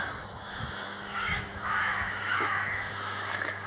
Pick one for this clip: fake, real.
fake